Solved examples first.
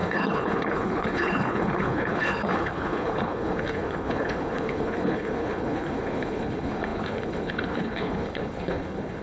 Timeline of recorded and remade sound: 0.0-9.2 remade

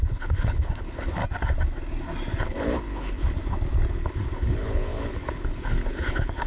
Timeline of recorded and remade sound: 0.0-1.2 remade; 1.2-2.4 recorded; 2.4-3.4 remade; 3.4-3.9 recorded; 3.9-6.5 remade

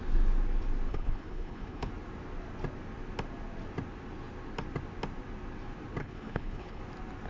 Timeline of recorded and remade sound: 0.0-0.9 recorded; 0.9-1.9 remade; 1.9-6.0 recorded; 6.0-6.8 remade; 6.8-7.3 recorded